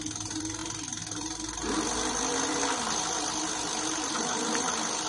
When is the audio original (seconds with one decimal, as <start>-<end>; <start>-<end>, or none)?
0.0-5.1